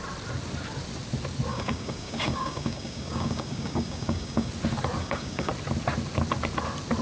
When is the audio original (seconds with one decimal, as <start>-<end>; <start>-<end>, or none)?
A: 0.0-1.5; 4.5-5.0; 5.5-7.0